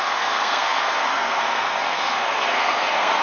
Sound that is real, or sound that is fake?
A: fake